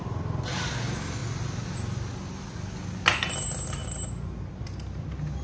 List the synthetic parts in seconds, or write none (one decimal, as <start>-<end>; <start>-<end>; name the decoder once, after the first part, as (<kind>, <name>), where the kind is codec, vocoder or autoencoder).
none